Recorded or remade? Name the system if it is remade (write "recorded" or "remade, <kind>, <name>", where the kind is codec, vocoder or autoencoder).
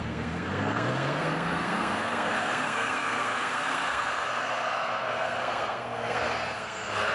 remade, codec, SNAC